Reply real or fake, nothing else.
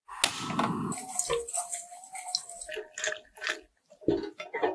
real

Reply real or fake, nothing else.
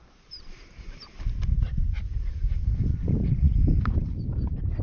fake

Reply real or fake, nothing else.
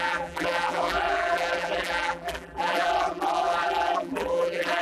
fake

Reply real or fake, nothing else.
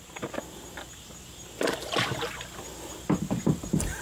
real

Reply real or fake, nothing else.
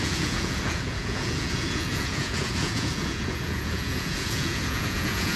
fake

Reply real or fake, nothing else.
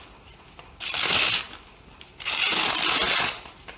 real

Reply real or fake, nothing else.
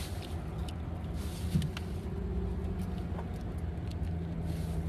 real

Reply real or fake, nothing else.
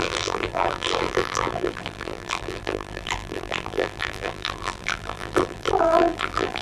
fake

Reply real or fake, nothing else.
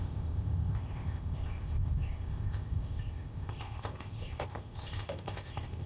fake